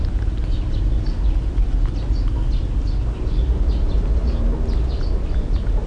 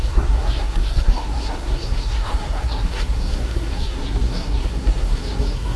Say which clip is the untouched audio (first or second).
first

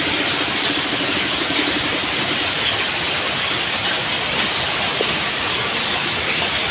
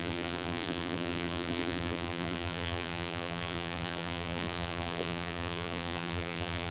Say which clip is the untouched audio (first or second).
first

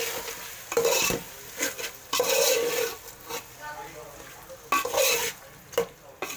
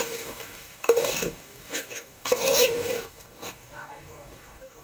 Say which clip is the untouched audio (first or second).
first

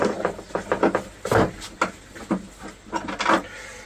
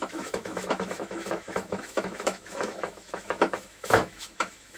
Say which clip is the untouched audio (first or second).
first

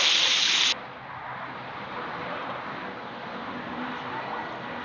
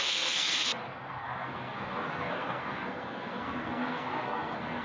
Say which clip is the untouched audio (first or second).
first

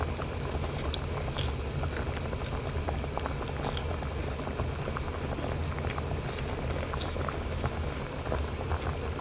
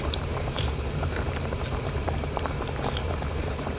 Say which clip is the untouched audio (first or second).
first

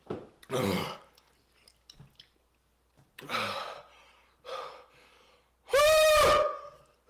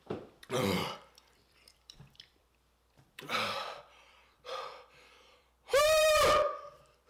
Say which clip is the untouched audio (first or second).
first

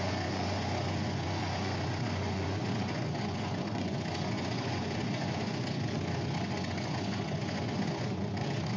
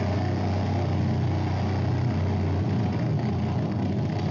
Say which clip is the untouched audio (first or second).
second